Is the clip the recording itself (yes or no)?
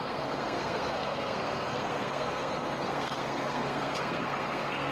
no